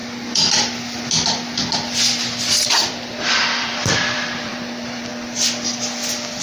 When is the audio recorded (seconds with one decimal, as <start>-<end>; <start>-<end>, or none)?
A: 0.0-2.7; 5.1-6.4